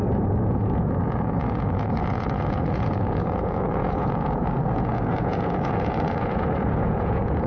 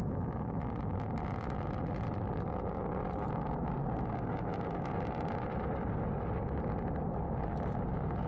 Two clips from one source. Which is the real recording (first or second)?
second